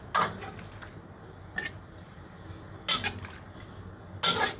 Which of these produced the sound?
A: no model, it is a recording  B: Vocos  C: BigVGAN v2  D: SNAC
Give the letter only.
A